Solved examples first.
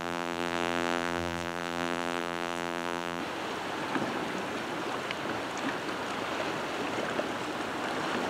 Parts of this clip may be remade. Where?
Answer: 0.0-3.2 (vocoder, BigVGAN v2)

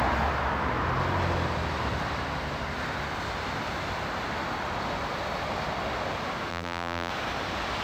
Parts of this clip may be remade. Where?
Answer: 6.5-7.1 (vocoder, BigVGAN v2)